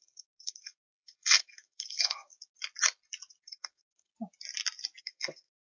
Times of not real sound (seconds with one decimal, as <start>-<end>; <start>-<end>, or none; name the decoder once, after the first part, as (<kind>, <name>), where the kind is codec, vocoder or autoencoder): 0.0-2.3 (codec, SNAC); 3.4-4.1; 5.0-5.8